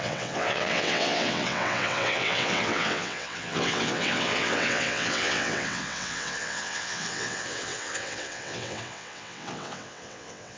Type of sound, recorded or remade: remade